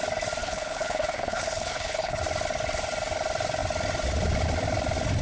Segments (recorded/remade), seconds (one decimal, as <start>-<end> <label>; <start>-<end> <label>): 0.0-0.4 recorded; 0.4-2.2 remade; 2.2-5.2 recorded

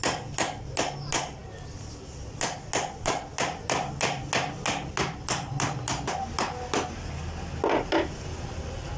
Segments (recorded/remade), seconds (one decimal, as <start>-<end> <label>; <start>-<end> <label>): 0.0-9.0 recorded